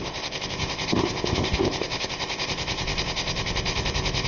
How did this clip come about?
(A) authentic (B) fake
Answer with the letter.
B